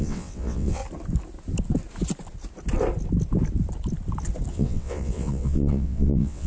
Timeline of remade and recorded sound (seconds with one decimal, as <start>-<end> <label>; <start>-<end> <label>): 0.0-0.8 remade; 0.8-4.5 recorded; 4.5-6.5 remade